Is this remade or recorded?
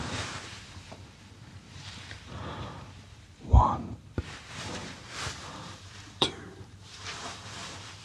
remade